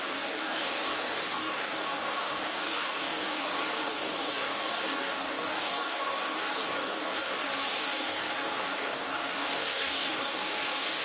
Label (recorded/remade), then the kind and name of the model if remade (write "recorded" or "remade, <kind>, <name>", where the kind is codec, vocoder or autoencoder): remade, codec, DAC